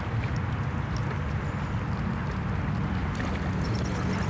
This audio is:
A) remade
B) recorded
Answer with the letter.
B